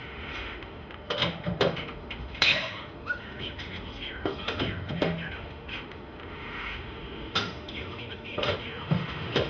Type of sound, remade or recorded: remade